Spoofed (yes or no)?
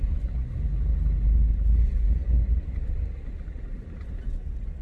no